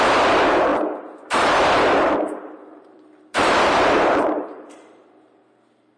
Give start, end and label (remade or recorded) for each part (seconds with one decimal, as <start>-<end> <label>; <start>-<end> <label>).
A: 0.0-2.7 recorded; 2.7-5.4 remade; 5.4-6.0 recorded